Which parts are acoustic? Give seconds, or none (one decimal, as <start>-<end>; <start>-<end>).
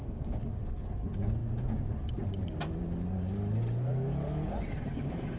0.7-5.4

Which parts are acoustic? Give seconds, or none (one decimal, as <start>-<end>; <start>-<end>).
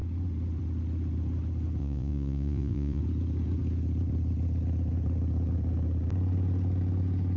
0.0-1.8; 3.0-7.4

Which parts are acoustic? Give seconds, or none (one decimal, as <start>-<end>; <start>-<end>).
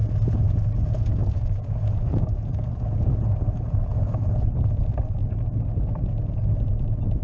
4.3-7.2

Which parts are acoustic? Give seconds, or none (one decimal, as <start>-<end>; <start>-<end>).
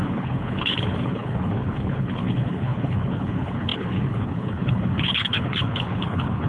none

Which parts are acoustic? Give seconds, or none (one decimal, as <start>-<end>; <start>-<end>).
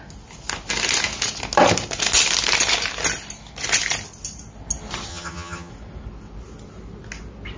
0.0-5.1; 5.7-7.6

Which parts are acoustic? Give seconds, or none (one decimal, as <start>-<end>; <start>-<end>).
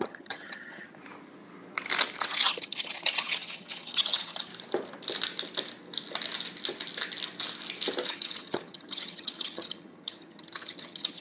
1.0-2.2; 4.5-8.1